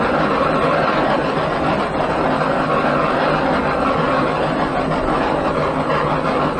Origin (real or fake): real